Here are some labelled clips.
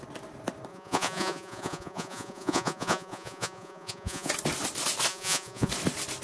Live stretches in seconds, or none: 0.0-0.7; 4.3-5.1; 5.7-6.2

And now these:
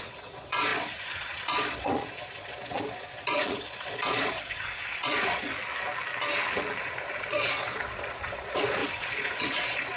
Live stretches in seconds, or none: 5.6-6.8

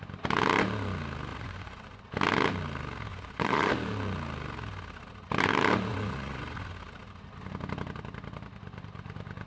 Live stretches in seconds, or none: 0.0-1.3; 2.0-3.1; 3.7-5.9; 6.7-9.5

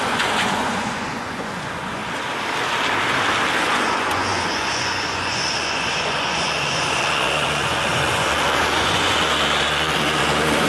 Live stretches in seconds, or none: 2.0-3.6

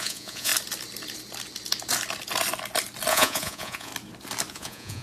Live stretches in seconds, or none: 0.5-3.1; 3.9-4.5

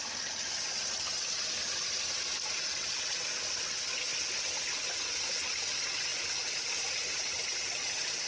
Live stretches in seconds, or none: 0.0-8.3

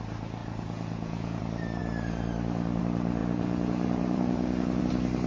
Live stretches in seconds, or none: 0.0-0.4; 1.4-3.2; 4.8-5.3

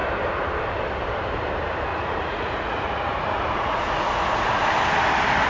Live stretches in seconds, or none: 0.0-1.9; 4.7-5.5